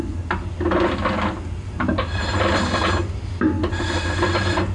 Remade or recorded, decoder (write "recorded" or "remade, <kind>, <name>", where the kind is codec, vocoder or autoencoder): recorded